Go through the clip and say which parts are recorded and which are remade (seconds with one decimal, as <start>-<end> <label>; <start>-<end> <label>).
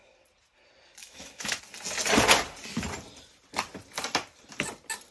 0.0-1.0 recorded; 1.0-1.6 remade; 1.6-5.1 recorded